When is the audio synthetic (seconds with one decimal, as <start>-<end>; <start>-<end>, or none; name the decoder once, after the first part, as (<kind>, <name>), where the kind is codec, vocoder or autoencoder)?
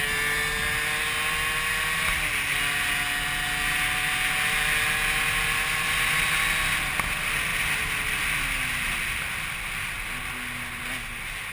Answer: none